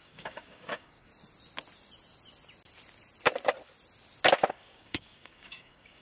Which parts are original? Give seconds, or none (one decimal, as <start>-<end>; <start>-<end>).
1.1-4.5